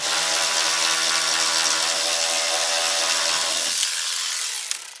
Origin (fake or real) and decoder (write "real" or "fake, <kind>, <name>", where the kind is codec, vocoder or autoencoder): real